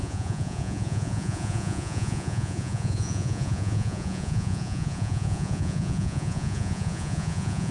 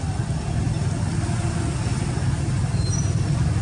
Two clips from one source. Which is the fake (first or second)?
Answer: first